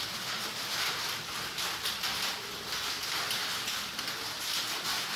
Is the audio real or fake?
real